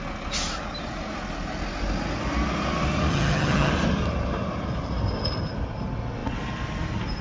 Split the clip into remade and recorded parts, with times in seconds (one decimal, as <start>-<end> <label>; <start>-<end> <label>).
0.0-3.1 recorded; 3.1-3.7 remade; 3.7-7.2 recorded